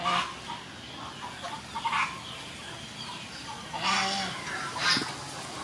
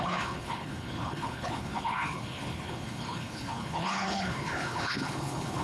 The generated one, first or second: second